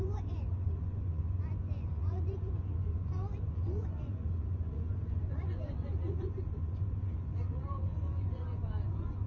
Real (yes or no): no